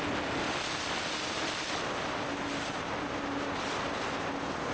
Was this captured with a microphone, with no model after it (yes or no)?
yes